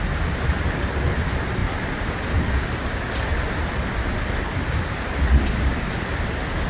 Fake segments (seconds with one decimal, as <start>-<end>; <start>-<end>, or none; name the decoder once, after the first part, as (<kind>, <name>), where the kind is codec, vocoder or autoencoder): none